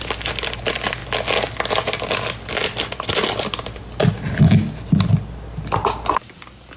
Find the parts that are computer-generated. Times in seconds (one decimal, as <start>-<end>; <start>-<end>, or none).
none